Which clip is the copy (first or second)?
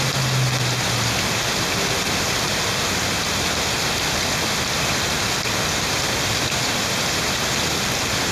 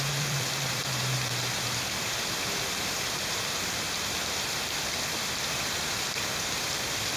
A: second